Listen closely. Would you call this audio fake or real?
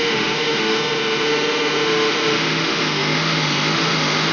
fake